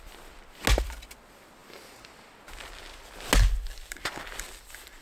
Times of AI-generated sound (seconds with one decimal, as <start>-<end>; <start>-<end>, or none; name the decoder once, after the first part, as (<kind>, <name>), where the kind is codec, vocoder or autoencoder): none